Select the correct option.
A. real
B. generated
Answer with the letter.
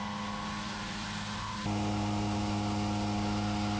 A